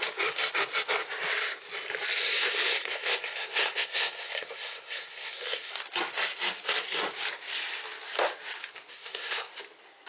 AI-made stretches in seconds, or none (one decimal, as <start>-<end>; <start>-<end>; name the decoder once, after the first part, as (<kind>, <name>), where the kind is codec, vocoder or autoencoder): 2.2-5.7 (codec, SNAC); 8.9-9.5